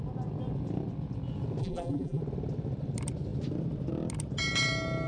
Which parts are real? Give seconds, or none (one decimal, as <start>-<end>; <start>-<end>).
0.0-1.6; 2.2-5.1